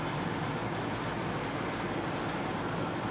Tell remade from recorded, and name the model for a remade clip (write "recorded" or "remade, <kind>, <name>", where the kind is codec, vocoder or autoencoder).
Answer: recorded